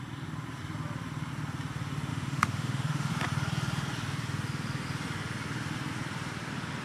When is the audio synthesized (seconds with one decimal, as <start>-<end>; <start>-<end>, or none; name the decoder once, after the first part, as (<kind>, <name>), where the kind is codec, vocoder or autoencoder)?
2.1-3.1 (autoencoder, DAC-VAE)